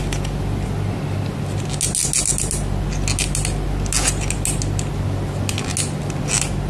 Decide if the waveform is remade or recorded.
recorded